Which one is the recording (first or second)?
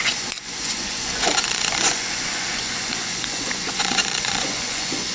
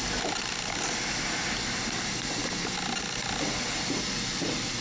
second